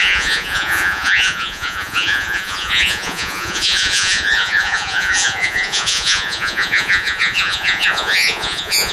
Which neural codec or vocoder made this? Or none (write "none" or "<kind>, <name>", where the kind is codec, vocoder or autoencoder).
vocoder, Vocos